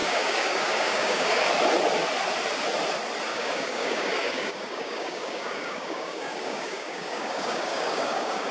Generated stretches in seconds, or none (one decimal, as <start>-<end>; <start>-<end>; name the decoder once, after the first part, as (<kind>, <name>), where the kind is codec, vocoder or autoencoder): 0.0-1.5 (codec, DAC); 3.3-8.5